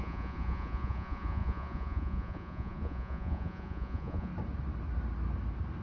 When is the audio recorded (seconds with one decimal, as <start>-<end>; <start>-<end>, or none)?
4.3-5.8